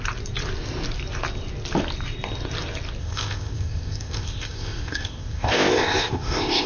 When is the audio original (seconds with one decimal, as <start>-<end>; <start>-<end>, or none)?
0.0-3.0